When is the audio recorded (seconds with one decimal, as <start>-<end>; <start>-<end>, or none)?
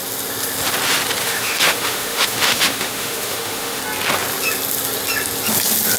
0.0-1.2; 3.8-6.0